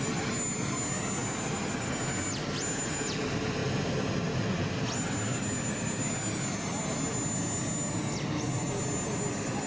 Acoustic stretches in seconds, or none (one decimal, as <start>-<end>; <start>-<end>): 0.0-9.7